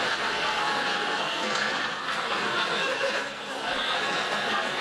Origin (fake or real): fake